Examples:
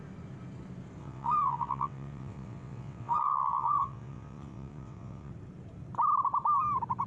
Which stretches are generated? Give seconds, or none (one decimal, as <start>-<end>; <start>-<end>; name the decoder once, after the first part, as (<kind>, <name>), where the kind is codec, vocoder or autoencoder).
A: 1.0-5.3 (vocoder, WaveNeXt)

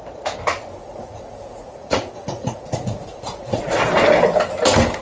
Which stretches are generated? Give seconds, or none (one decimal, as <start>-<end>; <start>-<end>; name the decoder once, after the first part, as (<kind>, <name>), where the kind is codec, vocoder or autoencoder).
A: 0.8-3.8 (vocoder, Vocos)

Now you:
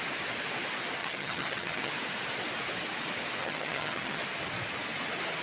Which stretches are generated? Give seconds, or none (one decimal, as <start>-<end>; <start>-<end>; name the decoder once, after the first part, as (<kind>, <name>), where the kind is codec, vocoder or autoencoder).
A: 1.0-1.9 (vocoder, HiFi-GAN); 3.4-4.2